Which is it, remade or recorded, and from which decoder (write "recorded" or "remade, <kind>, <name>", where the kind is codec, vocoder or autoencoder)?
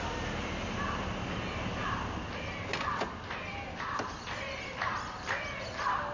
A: recorded